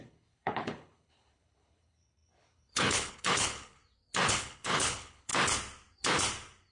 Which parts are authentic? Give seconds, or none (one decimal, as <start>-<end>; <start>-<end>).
3.8-4.3; 5.3-6.7